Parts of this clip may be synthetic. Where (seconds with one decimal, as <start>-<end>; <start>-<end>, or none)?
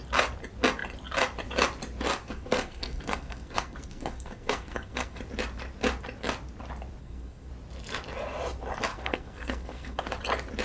2.2-5.2; 7.0-7.5; 8.9-10.1